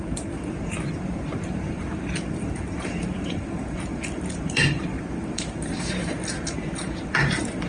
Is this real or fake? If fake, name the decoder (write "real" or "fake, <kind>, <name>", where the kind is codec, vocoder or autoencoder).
fake, vocoder, BigVGAN v2